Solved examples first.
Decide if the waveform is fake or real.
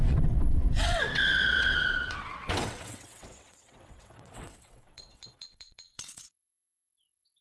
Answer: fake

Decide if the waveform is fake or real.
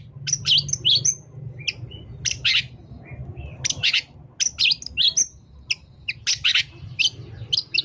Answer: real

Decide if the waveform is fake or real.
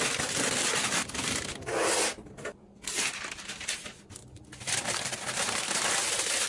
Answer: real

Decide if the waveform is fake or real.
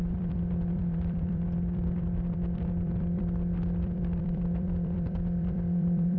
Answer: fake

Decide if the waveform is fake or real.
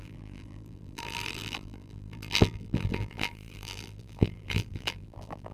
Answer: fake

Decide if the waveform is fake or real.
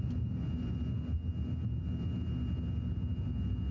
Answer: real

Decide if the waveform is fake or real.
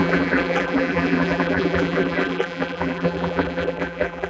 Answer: fake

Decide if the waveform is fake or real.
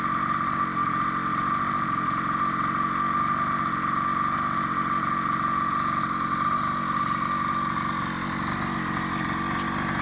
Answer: real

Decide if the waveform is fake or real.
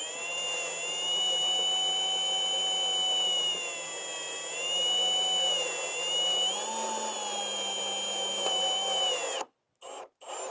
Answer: real